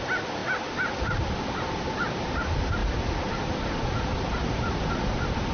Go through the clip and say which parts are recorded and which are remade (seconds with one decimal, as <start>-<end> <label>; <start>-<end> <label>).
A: 0.0-5.5 recorded